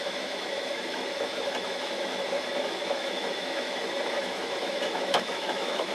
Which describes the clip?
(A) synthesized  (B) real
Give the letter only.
A